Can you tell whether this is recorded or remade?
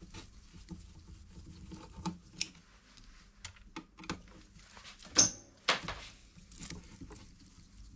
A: recorded